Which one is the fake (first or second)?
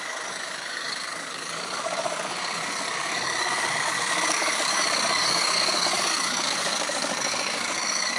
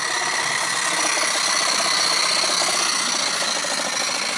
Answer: first